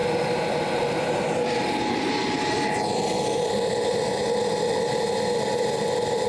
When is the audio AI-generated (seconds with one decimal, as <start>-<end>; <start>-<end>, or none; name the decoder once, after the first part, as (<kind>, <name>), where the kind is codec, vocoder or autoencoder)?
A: none